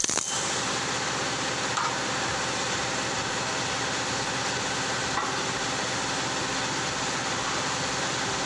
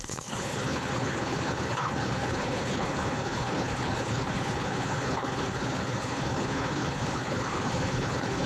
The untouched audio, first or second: first